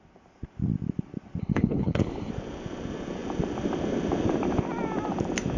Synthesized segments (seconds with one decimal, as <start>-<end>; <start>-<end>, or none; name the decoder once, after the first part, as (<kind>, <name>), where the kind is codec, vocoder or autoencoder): 1.4-2.3 (codec, HILCodec)